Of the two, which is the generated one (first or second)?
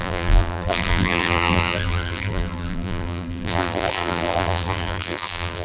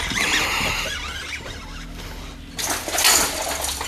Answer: first